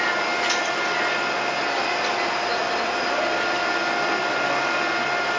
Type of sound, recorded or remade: recorded